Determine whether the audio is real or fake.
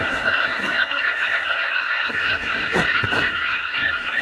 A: fake